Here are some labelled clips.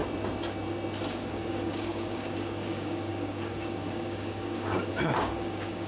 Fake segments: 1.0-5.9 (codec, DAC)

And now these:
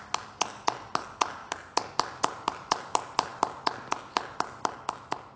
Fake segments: none

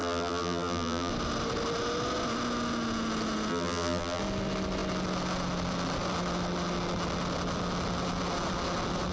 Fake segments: 0.0-1.1 (vocoder, BigVGAN v2); 3.5-4.2